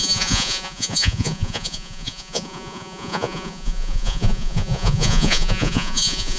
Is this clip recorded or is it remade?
remade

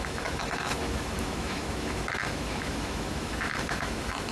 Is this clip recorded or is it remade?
remade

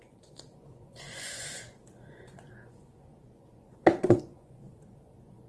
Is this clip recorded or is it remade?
remade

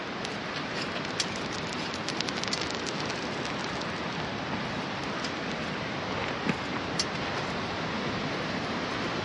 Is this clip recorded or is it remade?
recorded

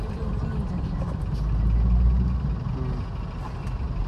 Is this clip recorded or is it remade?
recorded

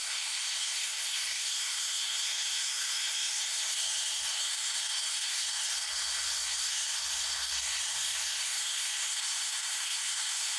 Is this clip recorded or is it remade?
remade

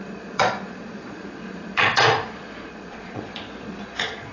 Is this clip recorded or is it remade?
remade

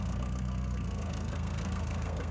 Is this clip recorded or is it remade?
remade